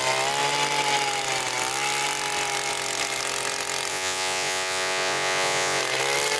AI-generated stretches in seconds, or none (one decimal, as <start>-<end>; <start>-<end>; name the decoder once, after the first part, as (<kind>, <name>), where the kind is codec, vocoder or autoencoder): 3.9-5.8 (vocoder, Vocos)